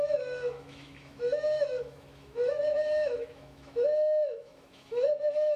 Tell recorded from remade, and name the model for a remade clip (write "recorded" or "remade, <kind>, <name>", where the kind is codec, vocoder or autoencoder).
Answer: remade, autoencoder, DAC-VAE